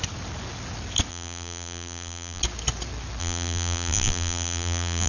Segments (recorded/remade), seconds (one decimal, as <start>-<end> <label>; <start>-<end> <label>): 0.0-1.1 recorded; 1.1-2.4 remade; 2.4-3.2 recorded; 3.2-5.1 remade